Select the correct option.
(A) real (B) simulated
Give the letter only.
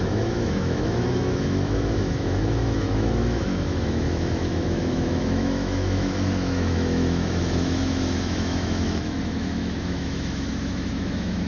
B